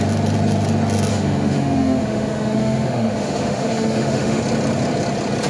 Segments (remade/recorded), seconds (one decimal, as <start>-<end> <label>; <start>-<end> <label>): 0.0-1.1 recorded; 1.1-4.4 remade; 4.4-5.5 recorded